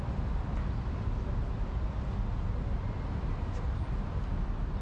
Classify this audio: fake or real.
real